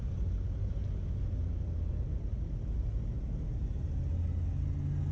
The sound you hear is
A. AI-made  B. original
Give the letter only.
B